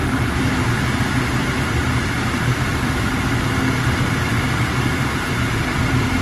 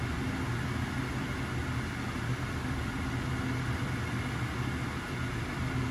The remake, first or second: first